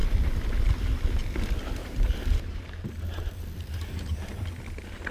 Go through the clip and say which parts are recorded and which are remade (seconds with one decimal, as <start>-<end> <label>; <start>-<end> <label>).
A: 0.0-1.8 recorded; 1.8-4.2 remade; 4.2-5.1 recorded